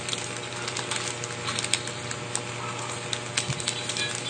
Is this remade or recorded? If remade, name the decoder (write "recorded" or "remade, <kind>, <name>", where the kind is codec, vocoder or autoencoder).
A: recorded